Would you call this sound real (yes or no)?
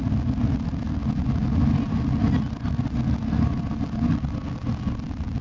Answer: yes